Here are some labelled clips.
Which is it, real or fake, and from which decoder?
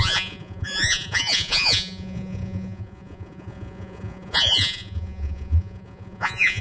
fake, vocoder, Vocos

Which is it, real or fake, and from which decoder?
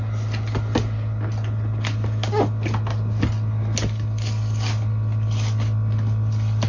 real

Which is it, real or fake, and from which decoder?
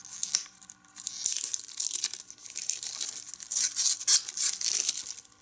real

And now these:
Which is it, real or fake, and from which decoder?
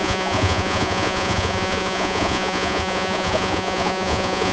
fake, vocoder, Vocos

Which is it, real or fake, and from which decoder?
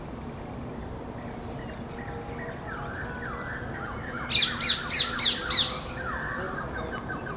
real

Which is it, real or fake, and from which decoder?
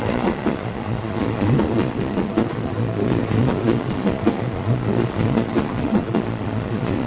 fake, vocoder, Vocos